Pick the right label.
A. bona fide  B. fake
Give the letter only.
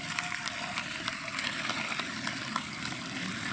A